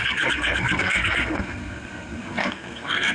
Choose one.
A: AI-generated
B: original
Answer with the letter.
A